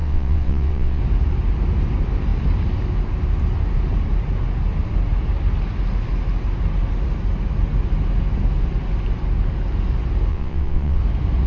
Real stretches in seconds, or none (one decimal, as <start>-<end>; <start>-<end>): 1.0-10.3; 11.0-11.5